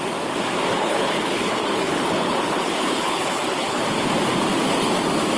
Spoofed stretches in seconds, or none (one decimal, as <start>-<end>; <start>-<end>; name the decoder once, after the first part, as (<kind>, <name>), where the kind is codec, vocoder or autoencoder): 0.7-3.8 (codec, HILCodec)